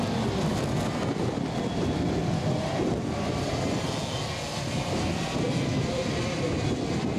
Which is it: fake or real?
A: real